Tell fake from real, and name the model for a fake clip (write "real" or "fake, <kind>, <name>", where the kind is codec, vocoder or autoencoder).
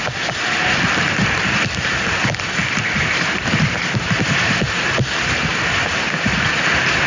real